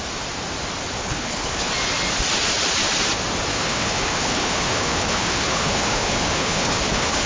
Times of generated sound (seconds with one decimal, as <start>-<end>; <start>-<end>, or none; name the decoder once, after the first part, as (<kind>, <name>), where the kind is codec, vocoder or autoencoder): 1.0-1.7 (codec, HILCodec); 3.5-7.3